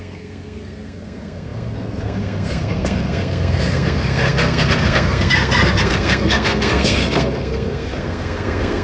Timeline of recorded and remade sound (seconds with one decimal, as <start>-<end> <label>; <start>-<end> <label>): 0.0-8.8 remade